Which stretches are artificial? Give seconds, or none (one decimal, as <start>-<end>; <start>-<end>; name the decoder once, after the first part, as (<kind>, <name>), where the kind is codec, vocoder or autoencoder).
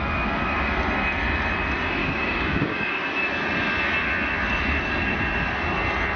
2.0-2.9 (codec, DAC)